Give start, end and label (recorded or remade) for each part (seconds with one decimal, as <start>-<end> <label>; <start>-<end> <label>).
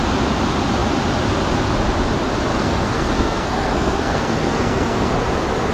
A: 0.0-2.5 recorded; 2.5-5.1 remade; 5.1-5.7 recorded